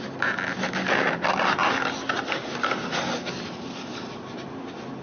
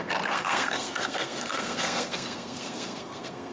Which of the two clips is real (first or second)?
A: first